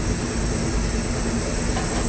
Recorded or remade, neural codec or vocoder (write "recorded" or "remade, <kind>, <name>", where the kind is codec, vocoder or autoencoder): recorded